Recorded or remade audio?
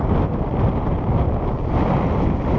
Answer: recorded